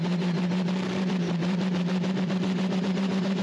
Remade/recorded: remade